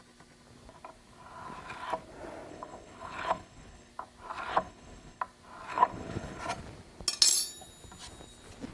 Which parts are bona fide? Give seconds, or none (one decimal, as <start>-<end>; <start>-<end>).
0.0-2.5; 3.9-4.5; 5.2-5.7; 6.4-8.7